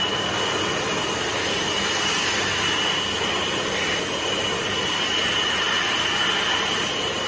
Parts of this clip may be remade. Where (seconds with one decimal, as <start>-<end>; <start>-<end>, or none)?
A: none